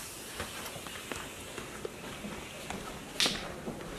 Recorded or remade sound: recorded